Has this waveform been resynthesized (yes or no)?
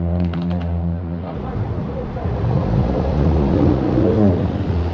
yes